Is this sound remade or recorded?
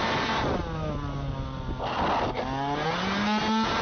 recorded